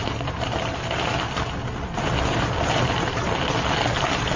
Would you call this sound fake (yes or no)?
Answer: no